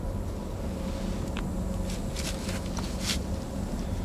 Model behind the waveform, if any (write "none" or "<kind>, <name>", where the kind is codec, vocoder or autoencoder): none